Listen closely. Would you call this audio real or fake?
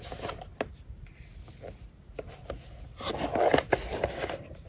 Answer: real